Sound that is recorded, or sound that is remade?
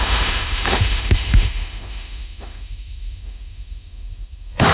remade